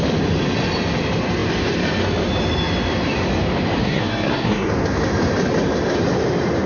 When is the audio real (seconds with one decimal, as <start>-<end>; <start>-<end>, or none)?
0.0-3.8; 4.7-6.7